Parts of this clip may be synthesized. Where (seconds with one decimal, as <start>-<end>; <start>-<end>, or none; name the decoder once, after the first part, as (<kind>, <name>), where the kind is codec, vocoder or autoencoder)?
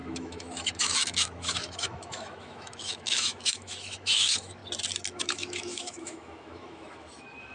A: 0.0-4.6 (autoencoder, DAC-VAE); 5.1-7.5